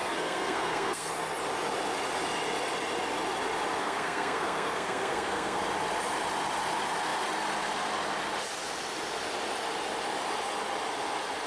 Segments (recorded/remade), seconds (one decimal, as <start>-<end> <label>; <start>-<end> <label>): 0.0-1.1 remade; 1.1-3.8 recorded; 3.8-5.6 remade; 5.6-11.5 recorded